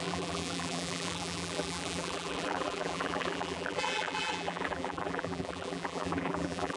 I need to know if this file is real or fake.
fake